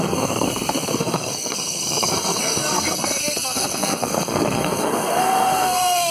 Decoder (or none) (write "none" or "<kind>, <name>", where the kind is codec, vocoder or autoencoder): codec, SNAC